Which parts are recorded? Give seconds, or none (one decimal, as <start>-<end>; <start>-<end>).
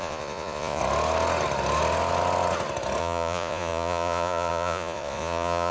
0.8-3.0